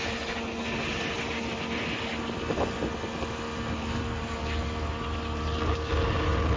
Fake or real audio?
real